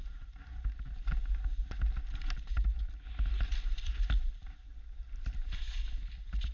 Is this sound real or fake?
real